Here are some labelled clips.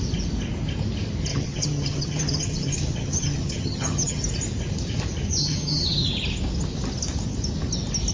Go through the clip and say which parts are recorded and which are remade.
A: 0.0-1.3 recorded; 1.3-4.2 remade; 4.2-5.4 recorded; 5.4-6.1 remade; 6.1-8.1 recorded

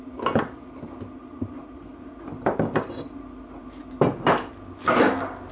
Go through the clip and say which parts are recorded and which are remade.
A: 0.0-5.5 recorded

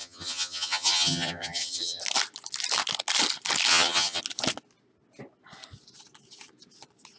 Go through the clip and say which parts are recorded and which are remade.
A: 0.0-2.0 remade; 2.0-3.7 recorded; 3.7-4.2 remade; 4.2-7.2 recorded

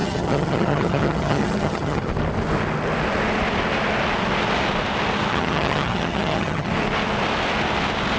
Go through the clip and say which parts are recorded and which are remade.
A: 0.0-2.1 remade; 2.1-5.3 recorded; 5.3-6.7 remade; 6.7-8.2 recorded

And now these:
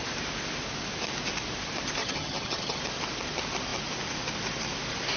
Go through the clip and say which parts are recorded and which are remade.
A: 0.0-2.0 recorded; 2.0-2.8 remade; 2.8-5.2 recorded

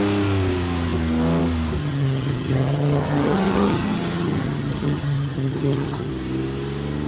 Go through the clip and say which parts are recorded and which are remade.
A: 0.0-1.8 recorded; 1.8-6.1 remade; 6.1-7.1 recorded